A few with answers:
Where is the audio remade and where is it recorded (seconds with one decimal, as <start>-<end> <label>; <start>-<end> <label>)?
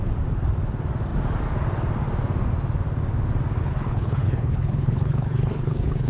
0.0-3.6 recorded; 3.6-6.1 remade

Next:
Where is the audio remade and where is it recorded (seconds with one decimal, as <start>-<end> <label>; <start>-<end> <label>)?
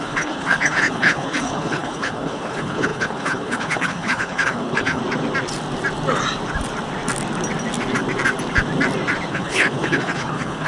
0.0-5.0 remade; 5.0-9.3 recorded; 9.3-10.7 remade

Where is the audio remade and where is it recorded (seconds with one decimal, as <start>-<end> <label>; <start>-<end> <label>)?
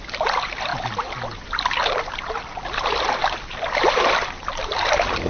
0.0-5.3 recorded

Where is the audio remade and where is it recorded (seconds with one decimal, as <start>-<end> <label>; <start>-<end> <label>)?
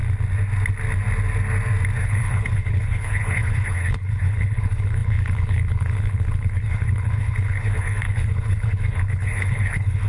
0.0-2.0 recorded; 2.0-10.1 remade